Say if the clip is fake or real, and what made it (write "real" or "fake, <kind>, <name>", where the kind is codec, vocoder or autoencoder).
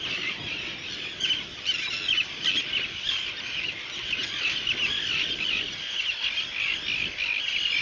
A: real